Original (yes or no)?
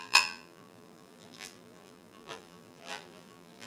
no